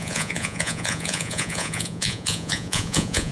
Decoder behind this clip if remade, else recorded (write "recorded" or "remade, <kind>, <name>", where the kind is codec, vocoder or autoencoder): remade, vocoder, Vocos